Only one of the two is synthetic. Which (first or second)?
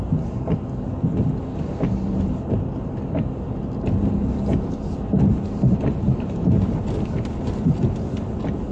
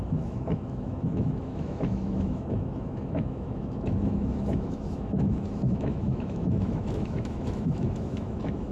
second